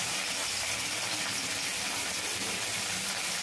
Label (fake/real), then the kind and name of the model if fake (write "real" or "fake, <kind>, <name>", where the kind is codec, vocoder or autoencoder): fake, vocoder, BigVGAN v2